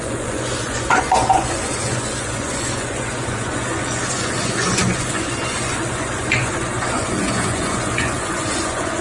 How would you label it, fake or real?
fake